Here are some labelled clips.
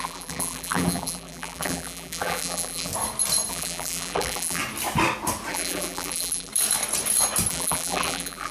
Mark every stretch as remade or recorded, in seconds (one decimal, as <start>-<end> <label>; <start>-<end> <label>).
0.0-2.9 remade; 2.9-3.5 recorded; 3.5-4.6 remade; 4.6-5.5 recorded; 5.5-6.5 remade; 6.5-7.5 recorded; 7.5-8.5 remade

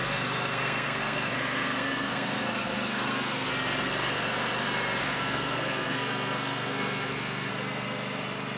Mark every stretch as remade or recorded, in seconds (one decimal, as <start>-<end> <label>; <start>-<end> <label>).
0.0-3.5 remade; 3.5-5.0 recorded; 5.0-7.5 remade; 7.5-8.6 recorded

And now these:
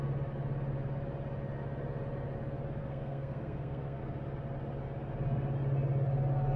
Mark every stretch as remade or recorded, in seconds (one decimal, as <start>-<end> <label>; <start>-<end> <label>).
0.0-2.8 recorded; 2.8-4.0 remade; 4.0-6.6 recorded